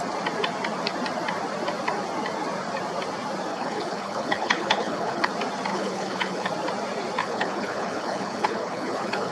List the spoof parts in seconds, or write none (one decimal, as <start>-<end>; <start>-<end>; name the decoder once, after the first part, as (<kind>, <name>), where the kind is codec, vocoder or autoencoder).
3.5-5.3 (codec, HILCodec); 5.7-6.5; 7.2-9.3